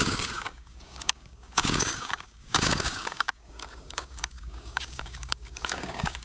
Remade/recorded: remade